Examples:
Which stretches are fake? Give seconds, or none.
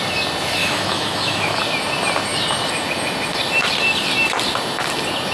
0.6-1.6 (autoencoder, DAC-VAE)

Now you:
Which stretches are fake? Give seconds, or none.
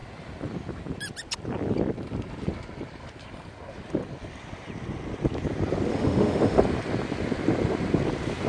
5.9-6.6 (autoencoder, DAC-VAE)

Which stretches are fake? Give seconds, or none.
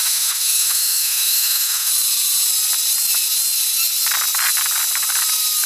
0.0-1.9 (autoencoder, DAC-VAE)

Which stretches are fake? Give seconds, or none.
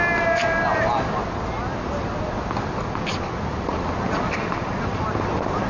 none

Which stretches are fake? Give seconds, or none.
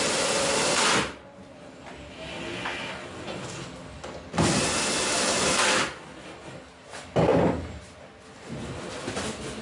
none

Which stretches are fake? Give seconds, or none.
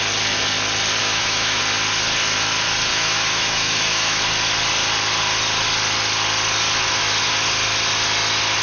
1.0-1.6 (autoencoder, DAC-VAE); 2.9-4.2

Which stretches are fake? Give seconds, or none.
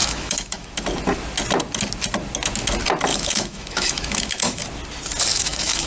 0.0-0.7 (autoencoder, DAC-VAE); 3.1-4.6; 5.3-5.9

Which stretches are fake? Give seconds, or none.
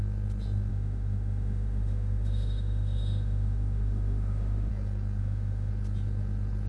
0.7-4.7 (autoencoder, DAC-VAE); 5.2-5.7